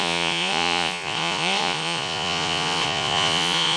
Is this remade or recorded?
remade